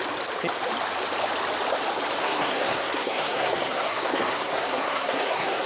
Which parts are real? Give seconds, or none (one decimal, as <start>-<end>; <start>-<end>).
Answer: 0.0-2.2